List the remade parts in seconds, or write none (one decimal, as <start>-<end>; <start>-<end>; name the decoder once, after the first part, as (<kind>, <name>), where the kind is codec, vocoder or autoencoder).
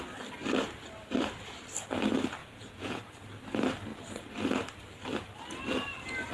2.4-3.0 (vocoder, Vocos)